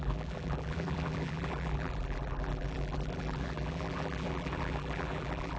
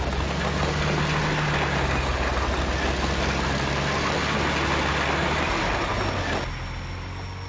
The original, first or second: second